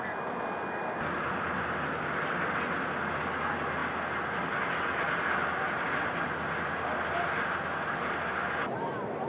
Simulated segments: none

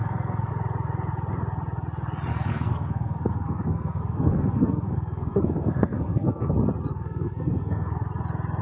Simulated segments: 0.0-0.5; 2.3-6.5; 6.9-8.1